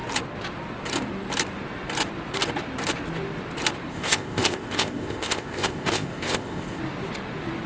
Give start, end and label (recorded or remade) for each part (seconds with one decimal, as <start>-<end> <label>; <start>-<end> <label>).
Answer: 0.0-3.9 recorded; 3.9-6.8 remade; 6.8-7.7 recorded